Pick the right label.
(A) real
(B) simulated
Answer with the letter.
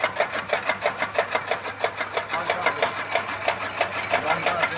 A